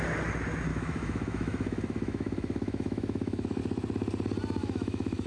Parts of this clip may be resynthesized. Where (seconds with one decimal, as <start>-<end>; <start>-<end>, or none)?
0.7-3.6; 4.6-5.3

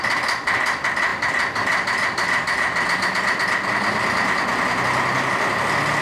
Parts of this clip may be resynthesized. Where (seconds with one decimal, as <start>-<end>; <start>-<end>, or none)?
none

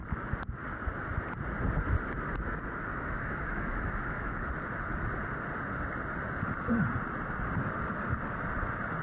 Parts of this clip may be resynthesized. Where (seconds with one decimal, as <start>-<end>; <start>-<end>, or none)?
2.9-4.5